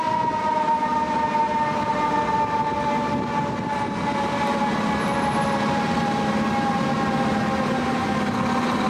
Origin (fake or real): real